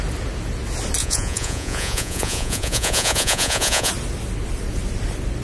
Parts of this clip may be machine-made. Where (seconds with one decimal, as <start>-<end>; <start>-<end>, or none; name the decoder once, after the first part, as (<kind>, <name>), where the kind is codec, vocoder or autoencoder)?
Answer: 1.0-3.9 (vocoder, Vocos)